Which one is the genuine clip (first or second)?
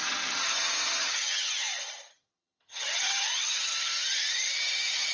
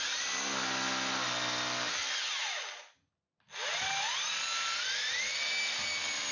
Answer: second